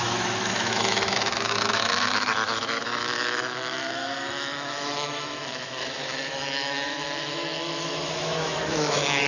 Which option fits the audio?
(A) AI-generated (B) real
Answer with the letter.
A